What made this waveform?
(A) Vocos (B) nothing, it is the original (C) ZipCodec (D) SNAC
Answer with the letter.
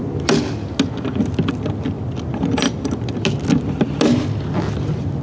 B